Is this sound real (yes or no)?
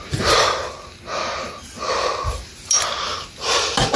yes